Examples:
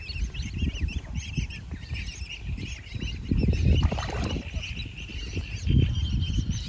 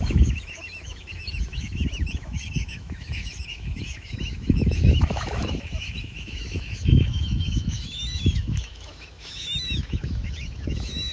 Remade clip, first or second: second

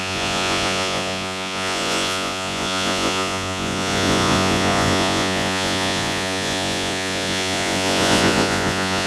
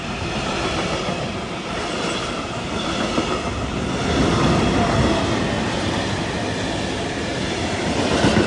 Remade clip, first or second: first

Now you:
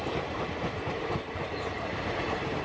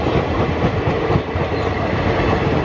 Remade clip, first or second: first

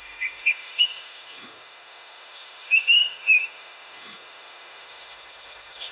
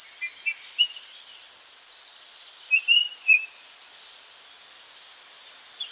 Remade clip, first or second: first